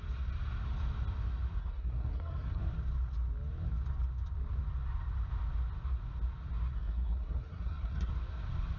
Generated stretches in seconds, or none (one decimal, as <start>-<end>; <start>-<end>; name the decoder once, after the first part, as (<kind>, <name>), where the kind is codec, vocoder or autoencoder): 1.6-2.6 (codec, SNAC); 6.7-8.1